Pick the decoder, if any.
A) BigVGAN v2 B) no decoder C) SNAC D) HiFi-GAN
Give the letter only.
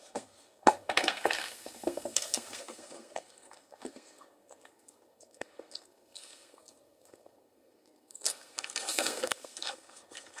C